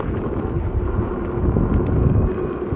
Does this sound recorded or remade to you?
recorded